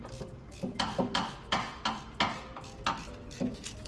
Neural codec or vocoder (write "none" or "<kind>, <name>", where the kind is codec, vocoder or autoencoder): none